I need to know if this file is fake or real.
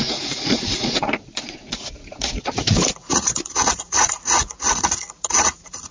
fake